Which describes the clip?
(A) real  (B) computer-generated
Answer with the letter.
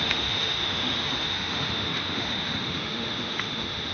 B